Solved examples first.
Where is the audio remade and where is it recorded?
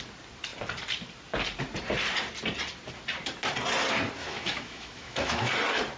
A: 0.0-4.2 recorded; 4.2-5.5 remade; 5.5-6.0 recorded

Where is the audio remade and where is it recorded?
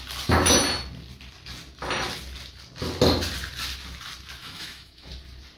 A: 0.0-4.4 recorded; 4.4-5.1 remade; 5.1-5.6 recorded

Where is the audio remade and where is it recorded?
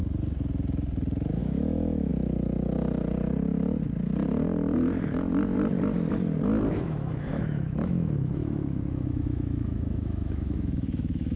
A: 0.0-1.4 recorded; 1.4-2.1 remade; 2.1-6.7 recorded; 6.7-11.4 remade